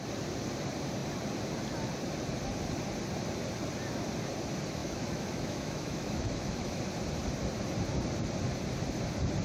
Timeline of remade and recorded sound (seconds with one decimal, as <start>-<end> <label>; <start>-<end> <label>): 0.0-4.8 recorded; 4.8-6.8 remade; 6.8-9.4 recorded

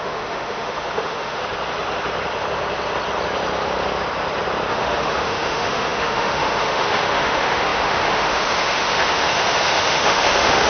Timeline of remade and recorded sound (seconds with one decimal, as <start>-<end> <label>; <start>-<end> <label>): 0.0-1.4 remade; 1.4-4.7 recorded; 4.7-10.7 remade